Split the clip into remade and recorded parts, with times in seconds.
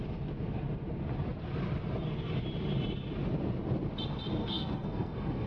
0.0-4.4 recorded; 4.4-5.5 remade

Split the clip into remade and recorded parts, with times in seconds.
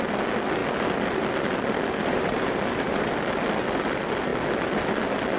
0.0-2.0 recorded; 2.0-3.1 remade; 3.1-5.4 recorded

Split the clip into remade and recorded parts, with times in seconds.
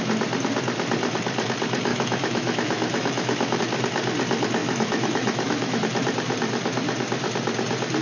0.0-1.9 recorded; 1.9-3.6 remade; 3.6-4.6 recorded; 4.6-5.8 remade; 5.8-8.0 recorded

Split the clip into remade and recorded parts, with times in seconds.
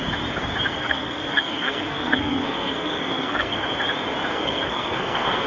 0.0-0.7 recorded; 0.7-3.6 remade; 3.6-4.3 recorded; 4.3-5.5 remade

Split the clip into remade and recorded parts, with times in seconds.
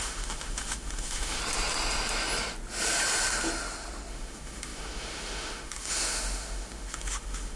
0.0-1.4 remade; 1.4-4.1 recorded; 4.1-7.6 remade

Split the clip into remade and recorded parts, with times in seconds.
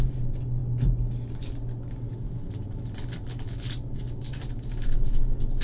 0.0-5.6 recorded